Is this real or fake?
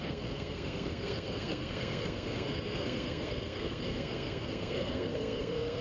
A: fake